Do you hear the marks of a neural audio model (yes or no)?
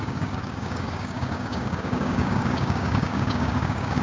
yes